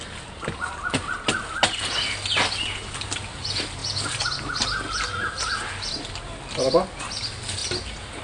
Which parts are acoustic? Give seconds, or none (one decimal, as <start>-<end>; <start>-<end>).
0.0-3.8; 5.9-8.2